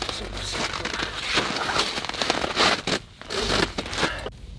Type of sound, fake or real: real